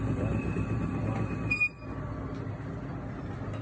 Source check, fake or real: real